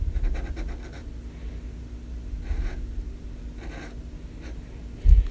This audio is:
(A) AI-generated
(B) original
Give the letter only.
B